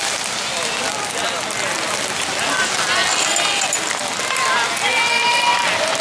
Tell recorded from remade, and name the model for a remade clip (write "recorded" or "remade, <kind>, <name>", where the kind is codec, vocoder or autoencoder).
recorded